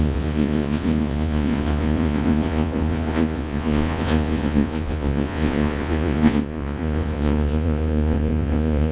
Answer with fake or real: fake